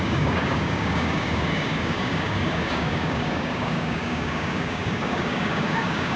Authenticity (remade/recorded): remade